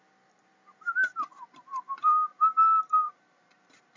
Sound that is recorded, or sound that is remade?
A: remade